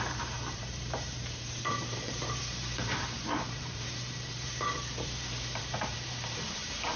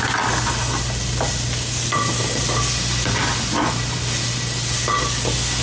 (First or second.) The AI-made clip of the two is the first